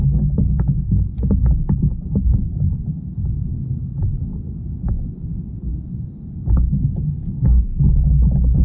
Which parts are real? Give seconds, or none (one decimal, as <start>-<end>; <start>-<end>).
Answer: 0.0-8.6